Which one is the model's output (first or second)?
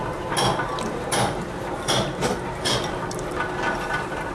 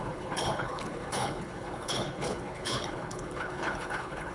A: second